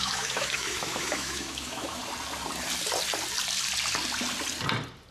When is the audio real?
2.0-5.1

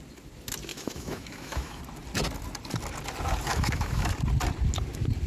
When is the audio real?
0.0-0.7; 1.8-3.5; 4.1-5.3

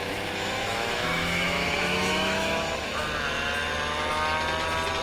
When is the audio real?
3.0-5.0

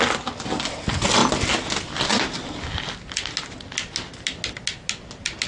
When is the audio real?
0.0-5.5

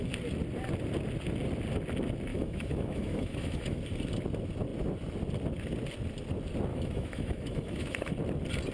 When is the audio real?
0.0-2.3; 3.8-6.7; 8.1-8.7

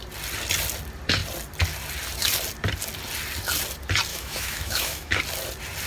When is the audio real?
0.0-4.1; 5.1-5.9

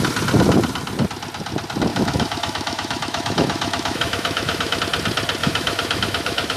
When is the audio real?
0.0-1.9; 4.8-5.4